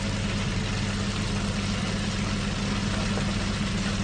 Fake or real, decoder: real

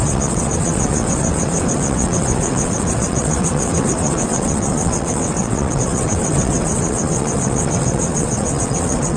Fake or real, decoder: fake, vocoder, WaveNeXt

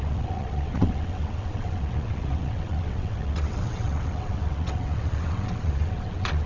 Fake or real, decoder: fake, vocoder, WaveNeXt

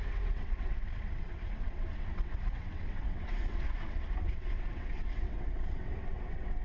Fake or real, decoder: fake, vocoder, WaveNeXt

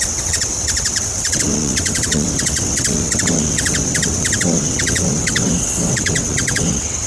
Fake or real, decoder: fake, vocoder, WaveNeXt